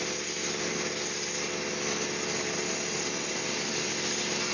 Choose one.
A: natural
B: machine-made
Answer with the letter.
A